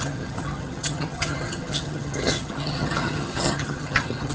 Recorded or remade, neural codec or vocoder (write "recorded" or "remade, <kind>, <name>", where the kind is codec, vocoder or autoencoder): remade, vocoder, HiFi-GAN